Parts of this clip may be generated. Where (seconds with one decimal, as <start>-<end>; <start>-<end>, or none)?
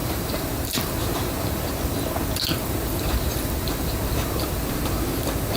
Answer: 0.0-1.7; 2.6-4.7